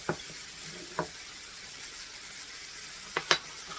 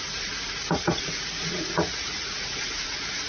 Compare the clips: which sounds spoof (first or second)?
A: second